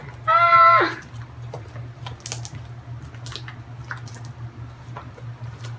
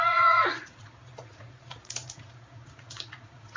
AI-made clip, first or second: second